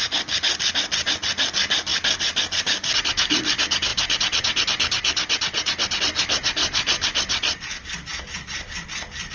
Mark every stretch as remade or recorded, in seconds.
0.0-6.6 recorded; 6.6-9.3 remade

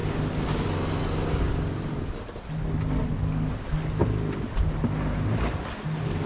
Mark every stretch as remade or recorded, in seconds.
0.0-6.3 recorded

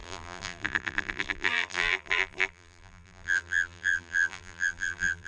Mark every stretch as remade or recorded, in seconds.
0.0-5.3 remade

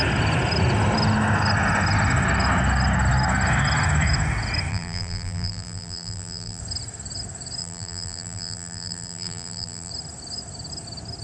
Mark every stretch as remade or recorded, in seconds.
0.0-4.7 recorded; 4.7-6.6 remade; 6.6-7.6 recorded; 7.6-9.9 remade; 9.9-11.2 recorded

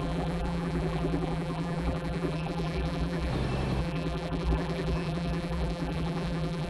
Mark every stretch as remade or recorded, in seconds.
0.0-3.3 remade; 3.3-3.8 recorded; 3.8-6.7 remade

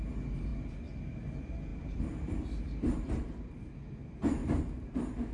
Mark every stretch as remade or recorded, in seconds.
0.0-1.7 recorded; 1.7-3.5 remade; 3.5-5.3 recorded

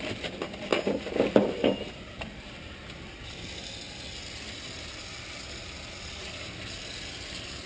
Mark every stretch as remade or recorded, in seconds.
0.0-0.7 recorded; 0.7-2.6 remade; 2.6-7.7 recorded